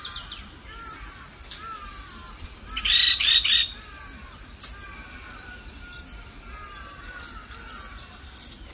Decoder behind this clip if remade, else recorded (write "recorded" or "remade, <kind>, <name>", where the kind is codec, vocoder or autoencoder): recorded